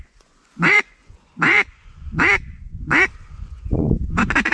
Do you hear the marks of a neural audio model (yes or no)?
yes